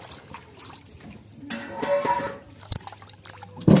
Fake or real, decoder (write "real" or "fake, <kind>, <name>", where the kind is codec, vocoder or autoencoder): real